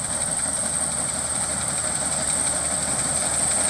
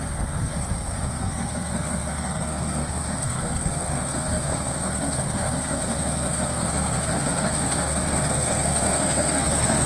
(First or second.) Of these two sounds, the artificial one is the second